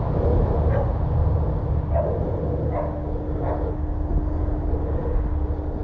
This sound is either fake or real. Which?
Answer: real